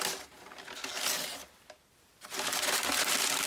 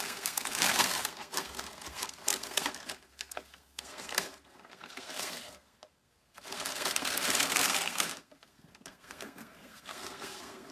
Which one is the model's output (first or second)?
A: second